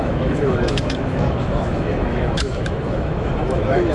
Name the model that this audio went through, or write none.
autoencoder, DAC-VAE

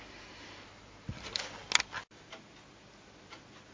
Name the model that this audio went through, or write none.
none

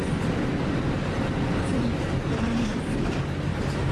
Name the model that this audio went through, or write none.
none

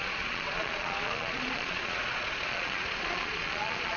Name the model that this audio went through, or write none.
vocoder, Vocos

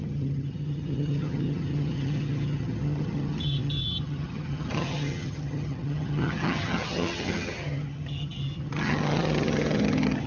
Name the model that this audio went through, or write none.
vocoder, HiFi-GAN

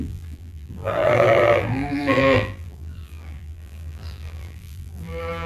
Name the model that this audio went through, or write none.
vocoder, BigVGAN v2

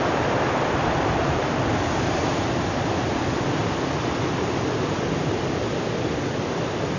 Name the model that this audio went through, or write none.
none